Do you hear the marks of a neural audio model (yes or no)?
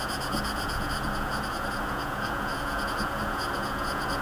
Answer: yes